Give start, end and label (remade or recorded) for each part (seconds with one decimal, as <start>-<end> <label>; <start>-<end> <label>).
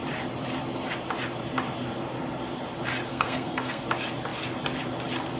0.0-3.1 recorded; 3.1-3.8 remade; 3.8-5.4 recorded